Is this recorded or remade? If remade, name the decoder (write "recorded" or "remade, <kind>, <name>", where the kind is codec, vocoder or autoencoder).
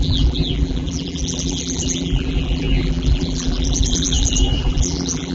remade, vocoder, BigVGAN v2